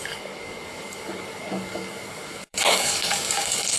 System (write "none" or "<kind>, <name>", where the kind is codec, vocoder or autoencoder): codec, DAC